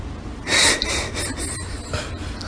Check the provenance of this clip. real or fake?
real